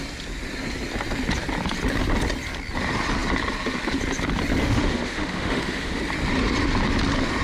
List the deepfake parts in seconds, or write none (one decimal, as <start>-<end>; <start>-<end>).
4.6-6.0